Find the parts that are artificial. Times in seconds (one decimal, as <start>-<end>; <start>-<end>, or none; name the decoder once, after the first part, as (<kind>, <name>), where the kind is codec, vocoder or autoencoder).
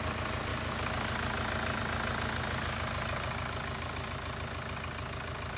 none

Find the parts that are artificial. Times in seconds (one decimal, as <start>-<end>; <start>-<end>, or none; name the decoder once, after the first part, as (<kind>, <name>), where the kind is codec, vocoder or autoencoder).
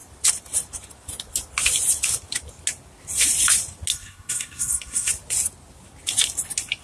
3.9-5.1 (codec, SNAC)